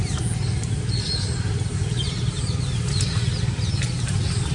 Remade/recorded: recorded